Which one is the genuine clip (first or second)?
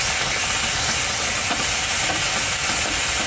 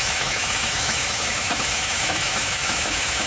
first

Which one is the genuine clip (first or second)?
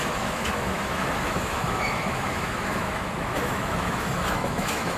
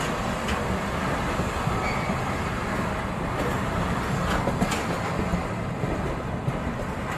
second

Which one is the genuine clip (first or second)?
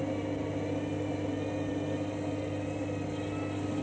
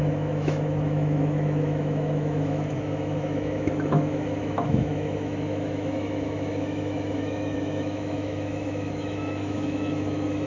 first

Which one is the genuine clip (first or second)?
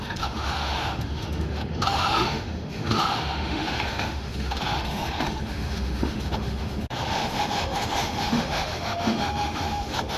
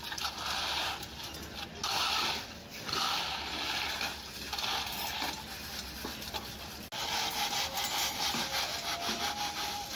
second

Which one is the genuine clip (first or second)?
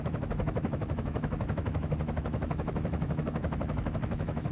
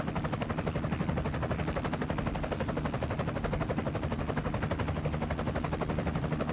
second